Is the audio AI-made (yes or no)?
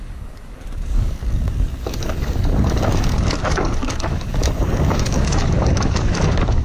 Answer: yes